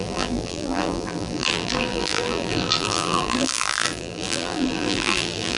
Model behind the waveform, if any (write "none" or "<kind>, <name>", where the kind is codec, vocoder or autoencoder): vocoder, BigVGAN v2